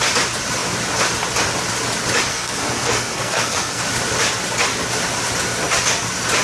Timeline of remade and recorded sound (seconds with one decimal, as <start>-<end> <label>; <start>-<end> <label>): 0.0-2.3 recorded; 2.3-3.8 remade; 3.8-6.4 recorded